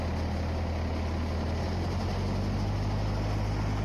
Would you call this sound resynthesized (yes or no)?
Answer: no